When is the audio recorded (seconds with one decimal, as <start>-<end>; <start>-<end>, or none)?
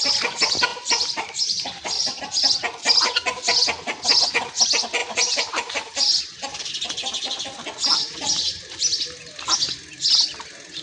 0.0-0.7; 2.2-5.0; 6.7-7.9; 8.8-10.8